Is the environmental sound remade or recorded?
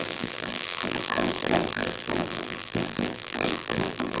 remade